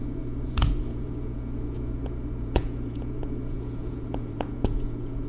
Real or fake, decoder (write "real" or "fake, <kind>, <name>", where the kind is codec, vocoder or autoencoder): fake, vocoder, Vocos